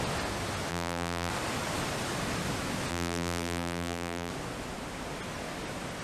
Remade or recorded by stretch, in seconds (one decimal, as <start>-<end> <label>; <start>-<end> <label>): 0.0-0.7 recorded; 0.7-1.3 remade; 1.3-2.9 recorded; 2.9-4.3 remade; 4.3-6.0 recorded